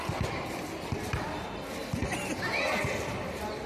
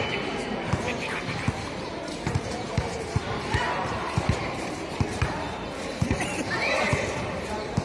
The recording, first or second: first